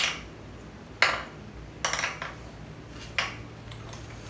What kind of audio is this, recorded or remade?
recorded